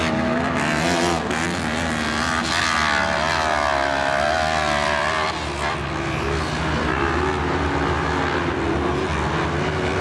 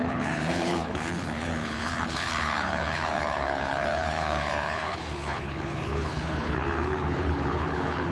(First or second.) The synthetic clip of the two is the second